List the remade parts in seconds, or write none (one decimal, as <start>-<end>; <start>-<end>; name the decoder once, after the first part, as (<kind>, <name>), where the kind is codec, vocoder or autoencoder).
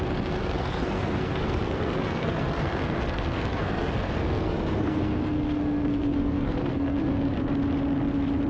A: 0.0-7.3 (codec, SNAC)